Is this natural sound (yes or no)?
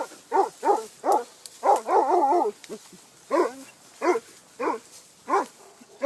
yes